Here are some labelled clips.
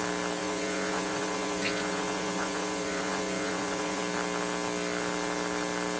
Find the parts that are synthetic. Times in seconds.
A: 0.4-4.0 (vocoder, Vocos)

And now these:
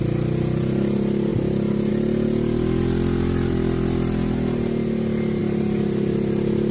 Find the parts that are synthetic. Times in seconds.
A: none

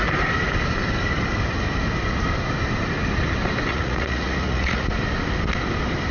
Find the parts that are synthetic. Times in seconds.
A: 3.7-4.9 (vocoder, Vocos)

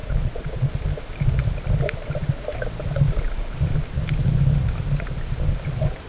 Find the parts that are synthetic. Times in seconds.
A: 0.0-0.7 (vocoder, Vocos)

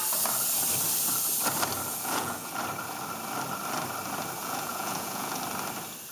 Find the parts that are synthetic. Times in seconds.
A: 1.9-2.5 (vocoder, Vocos); 4.4-5.4